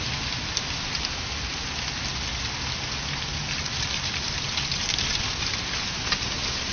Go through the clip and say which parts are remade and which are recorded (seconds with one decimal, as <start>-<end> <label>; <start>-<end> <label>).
0.0-6.7 recorded